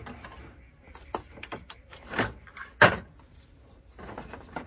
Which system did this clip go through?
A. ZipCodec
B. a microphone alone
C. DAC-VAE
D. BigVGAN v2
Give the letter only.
D